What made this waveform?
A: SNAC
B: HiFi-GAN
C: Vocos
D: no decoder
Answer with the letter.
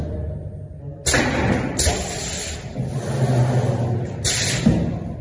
D